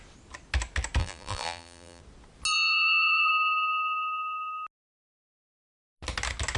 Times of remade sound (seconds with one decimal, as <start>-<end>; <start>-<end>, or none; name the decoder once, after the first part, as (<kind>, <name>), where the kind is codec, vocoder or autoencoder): 1.0-2.0 (vocoder, BigVGAN v2); 2.5-3.3